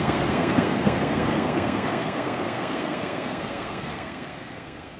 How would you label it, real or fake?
fake